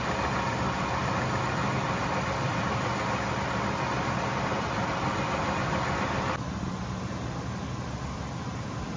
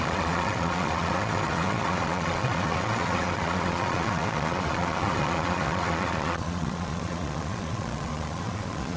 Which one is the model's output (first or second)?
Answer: second